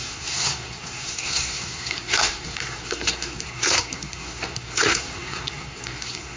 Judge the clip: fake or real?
fake